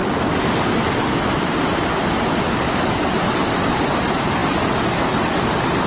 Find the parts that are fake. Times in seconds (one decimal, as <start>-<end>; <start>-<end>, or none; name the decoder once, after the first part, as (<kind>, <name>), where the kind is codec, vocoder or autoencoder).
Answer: none